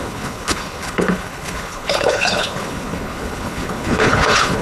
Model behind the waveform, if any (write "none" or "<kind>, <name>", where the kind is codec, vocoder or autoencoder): codec, HILCodec